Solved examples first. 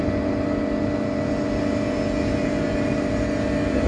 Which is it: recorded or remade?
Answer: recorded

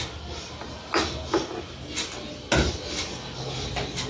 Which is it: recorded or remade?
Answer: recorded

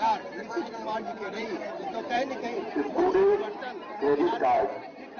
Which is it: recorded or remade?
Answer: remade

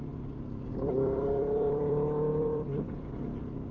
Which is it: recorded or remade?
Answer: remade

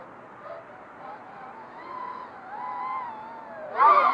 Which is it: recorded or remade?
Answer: recorded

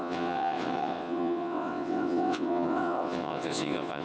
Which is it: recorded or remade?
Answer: remade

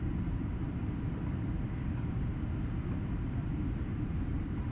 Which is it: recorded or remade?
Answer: remade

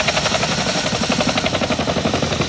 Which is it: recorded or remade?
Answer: recorded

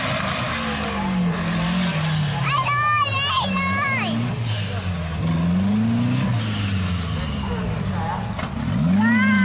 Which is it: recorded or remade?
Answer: recorded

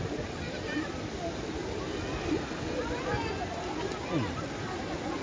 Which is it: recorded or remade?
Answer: recorded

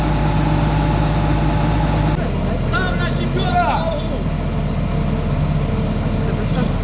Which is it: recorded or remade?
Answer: recorded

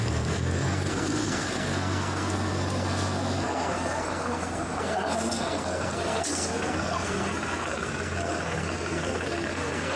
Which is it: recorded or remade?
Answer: remade